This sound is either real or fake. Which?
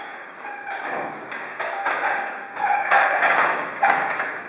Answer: fake